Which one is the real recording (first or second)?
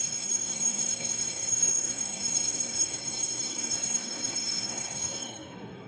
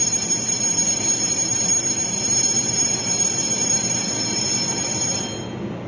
second